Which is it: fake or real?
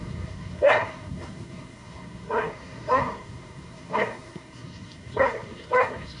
fake